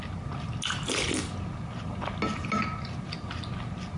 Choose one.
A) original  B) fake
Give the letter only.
A